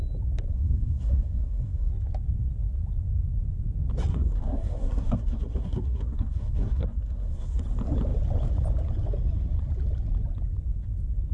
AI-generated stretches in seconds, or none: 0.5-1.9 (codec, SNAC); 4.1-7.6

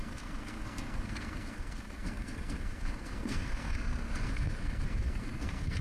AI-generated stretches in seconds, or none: 0.0-5.8 (codec, SNAC)

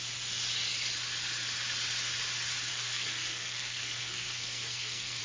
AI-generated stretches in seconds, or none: 2.7-5.2 (codec, SNAC)

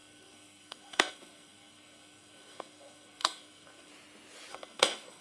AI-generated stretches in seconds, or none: 0.0-3.9 (codec, SNAC); 4.5-5.2